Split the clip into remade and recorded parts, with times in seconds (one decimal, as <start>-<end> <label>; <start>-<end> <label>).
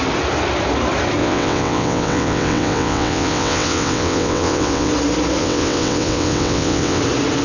0.0-1.2 recorded; 1.2-4.9 remade; 4.9-5.4 recorded; 5.4-7.0 remade; 7.0-7.4 recorded